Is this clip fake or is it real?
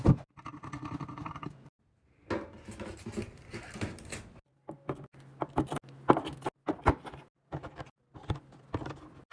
real